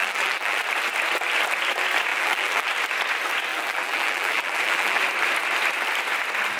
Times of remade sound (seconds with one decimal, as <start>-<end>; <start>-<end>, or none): 0.0-0.6; 2.1-2.7; 3.5-5.0